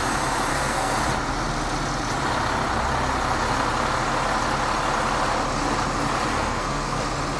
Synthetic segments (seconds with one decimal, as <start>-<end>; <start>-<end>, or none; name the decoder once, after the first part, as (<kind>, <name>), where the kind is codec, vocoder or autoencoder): 0.5-1.0 (codec, SNAC); 6.3-7.0